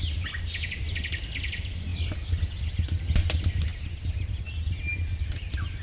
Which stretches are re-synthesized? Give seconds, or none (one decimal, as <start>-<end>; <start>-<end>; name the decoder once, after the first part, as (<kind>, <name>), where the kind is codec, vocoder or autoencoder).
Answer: none